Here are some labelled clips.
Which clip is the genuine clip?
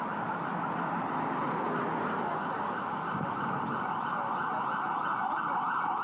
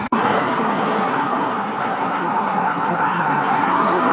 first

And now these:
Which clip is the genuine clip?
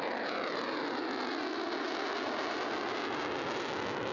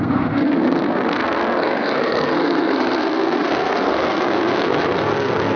first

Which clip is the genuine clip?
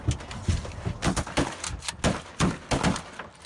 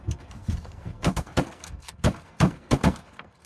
first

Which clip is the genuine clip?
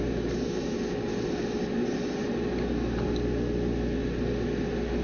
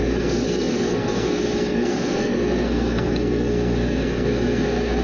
first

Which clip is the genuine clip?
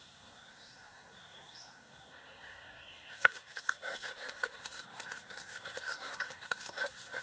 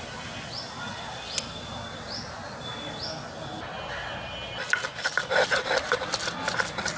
second